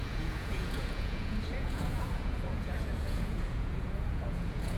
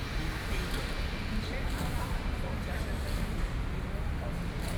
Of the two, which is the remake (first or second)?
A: first